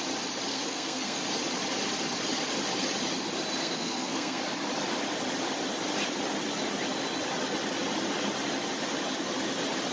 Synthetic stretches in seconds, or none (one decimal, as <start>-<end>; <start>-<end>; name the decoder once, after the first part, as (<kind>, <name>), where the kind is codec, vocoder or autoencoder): 0.5-1.2 (codec, SNAC); 3.6-4.4

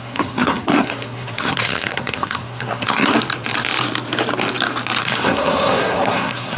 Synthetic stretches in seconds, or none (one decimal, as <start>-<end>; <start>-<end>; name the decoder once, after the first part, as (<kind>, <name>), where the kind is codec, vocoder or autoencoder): 0.0-3.1 (codec, SNAC); 5.0-6.6

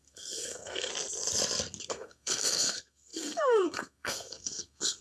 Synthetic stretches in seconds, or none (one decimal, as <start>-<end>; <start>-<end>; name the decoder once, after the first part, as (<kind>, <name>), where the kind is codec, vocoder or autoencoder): 0.0-0.9 (codec, SNAC); 1.9-5.0

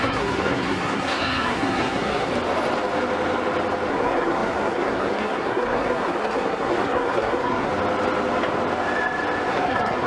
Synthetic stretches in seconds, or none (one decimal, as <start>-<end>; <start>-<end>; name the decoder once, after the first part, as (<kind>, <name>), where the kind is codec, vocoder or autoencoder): 0.0-2.3 (codec, SNAC); 3.9-7.7; 9.5-10.1

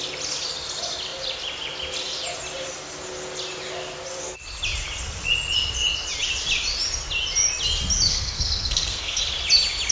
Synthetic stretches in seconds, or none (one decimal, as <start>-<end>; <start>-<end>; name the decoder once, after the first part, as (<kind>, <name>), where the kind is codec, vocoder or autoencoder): 8.1-9.2 (codec, SNAC)

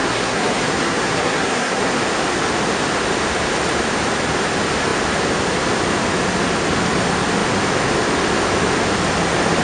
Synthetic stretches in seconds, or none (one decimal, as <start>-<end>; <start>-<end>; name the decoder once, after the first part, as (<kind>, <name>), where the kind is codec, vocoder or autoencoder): 0.0-1.9 (codec, SNAC)

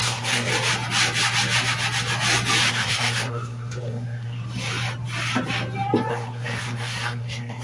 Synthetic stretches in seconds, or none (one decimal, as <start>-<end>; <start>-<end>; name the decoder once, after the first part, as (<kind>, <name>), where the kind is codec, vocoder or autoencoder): 0.0-0.5 (codec, SNAC); 2.7-4.4; 6.1-7.6